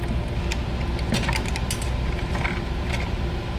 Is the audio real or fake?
real